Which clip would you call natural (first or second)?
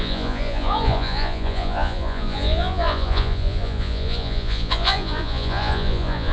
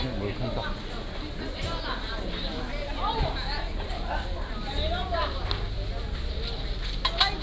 second